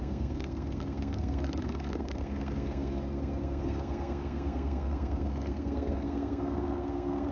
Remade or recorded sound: remade